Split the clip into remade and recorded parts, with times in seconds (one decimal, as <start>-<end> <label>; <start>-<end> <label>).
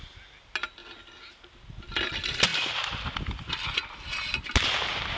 0.0-5.2 recorded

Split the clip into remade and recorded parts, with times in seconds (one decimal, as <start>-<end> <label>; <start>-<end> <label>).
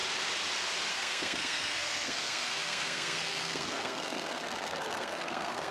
0.0-0.9 recorded; 0.9-5.7 remade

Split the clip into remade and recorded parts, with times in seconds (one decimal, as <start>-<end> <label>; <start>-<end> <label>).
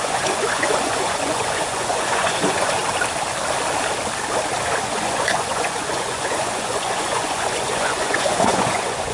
0.0-2.8 remade; 2.8-4.8 recorded; 4.8-9.1 remade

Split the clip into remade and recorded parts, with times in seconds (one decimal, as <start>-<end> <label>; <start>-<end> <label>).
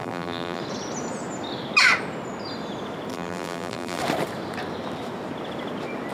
0.0-0.6 remade; 0.6-3.1 recorded; 3.1-4.0 remade; 4.0-6.1 recorded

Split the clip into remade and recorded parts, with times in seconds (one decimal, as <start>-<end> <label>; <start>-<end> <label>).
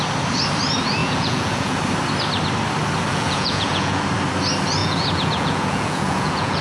0.0-1.0 recorded; 1.0-1.8 remade; 1.8-3.1 recorded; 3.1-4.0 remade; 4.0-4.8 recorded; 4.8-6.6 remade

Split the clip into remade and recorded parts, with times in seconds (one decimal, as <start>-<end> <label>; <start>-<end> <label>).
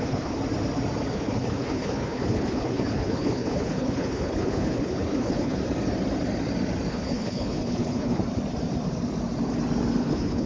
0.0-0.4 remade; 0.4-1.1 recorded; 1.1-5.6 remade; 5.6-6.9 recorded; 6.9-8.2 remade; 8.2-10.0 recorded; 10.0-10.5 remade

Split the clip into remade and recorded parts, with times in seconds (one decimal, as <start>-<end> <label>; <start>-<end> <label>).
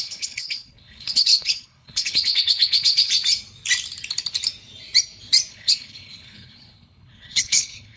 0.0-3.1 remade; 3.1-5.5 recorded; 5.5-8.0 remade